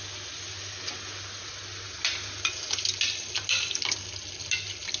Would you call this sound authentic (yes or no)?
yes